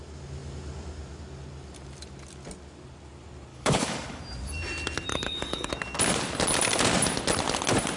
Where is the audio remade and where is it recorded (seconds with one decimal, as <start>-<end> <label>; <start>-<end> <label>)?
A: 0.0-3.5 recorded; 3.5-4.2 remade; 4.2-5.1 recorded; 5.1-5.7 remade; 5.7-8.0 recorded